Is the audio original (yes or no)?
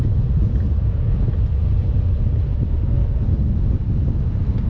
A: yes